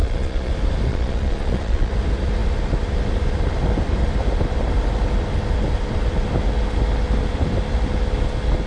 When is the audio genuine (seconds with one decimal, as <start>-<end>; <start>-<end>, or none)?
0.5-0.9; 1.9-8.7